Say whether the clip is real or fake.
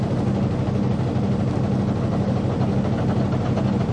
real